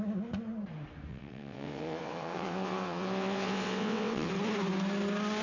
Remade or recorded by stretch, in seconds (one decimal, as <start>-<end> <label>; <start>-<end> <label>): 0.0-1.1 recorded; 1.1-4.3 remade; 4.3-5.4 recorded